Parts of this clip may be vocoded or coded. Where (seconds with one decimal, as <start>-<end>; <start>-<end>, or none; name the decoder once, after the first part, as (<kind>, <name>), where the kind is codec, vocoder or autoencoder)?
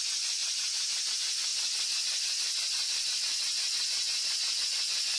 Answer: 0.0-0.4 (vocoder, Vocos); 1.1-1.5; 4.6-5.2